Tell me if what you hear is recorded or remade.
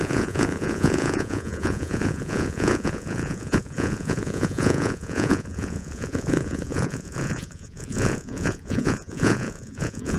remade